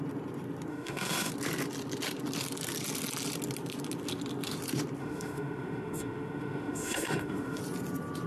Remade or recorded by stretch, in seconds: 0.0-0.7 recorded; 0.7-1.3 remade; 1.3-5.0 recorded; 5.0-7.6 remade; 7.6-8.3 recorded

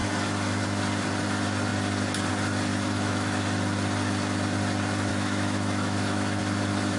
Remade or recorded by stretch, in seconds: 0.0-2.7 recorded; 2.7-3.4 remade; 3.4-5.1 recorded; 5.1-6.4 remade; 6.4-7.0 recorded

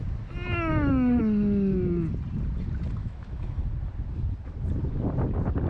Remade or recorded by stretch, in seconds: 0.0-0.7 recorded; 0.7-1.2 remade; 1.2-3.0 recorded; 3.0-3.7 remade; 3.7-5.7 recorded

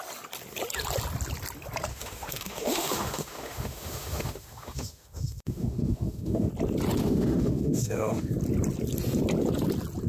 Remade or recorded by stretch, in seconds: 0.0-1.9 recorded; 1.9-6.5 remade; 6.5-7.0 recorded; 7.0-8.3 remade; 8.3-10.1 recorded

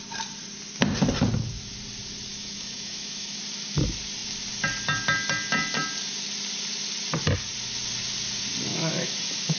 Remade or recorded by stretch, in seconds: 0.0-2.3 recorded; 2.3-3.4 remade; 3.4-8.7 recorded; 8.7-9.6 remade